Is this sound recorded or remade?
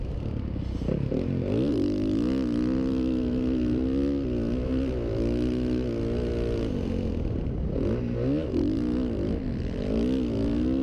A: recorded